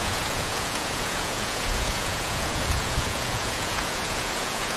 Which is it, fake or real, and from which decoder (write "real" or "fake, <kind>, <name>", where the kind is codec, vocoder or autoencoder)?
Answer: fake, vocoder, Vocos